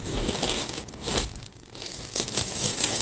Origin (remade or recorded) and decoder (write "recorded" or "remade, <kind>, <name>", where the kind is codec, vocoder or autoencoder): remade, codec, DAC